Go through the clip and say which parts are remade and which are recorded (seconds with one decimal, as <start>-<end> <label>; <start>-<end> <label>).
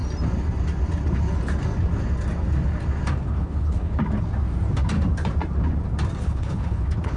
0.0-3.3 recorded; 3.3-4.0 remade; 4.0-6.2 recorded; 6.2-7.2 remade